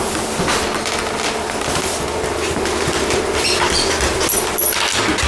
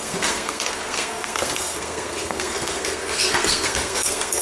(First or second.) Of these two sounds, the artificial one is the second